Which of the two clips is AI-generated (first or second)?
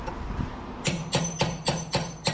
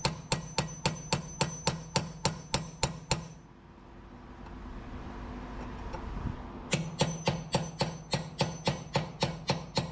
first